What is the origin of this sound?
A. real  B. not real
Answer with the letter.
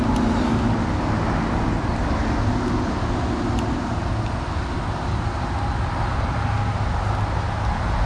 A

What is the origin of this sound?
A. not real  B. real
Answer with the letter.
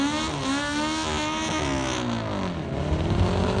B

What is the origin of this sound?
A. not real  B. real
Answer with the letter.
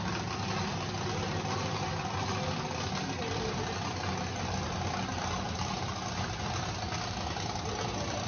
B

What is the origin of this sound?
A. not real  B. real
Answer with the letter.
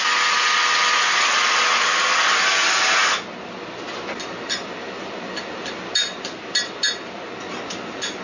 B